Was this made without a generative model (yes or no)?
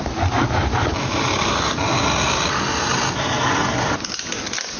yes